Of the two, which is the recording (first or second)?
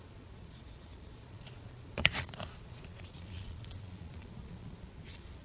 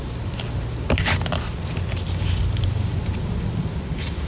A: second